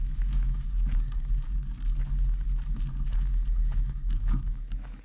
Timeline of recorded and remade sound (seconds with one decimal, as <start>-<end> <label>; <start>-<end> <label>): 0.0-0.7 remade; 0.7-3.6 recorded; 3.6-5.0 remade